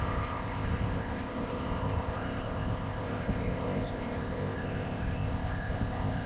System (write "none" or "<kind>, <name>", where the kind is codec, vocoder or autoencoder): codec, ZipCodec